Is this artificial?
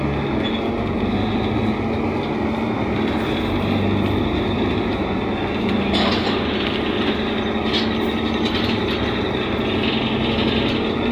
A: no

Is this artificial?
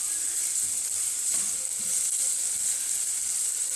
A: no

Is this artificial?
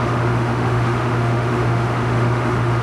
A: yes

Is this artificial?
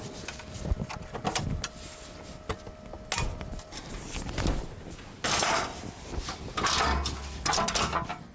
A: no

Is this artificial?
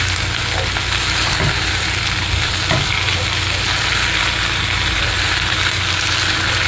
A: no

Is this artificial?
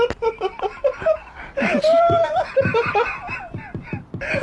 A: no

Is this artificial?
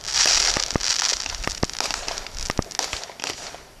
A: no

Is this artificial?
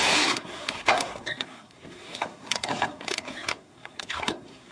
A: yes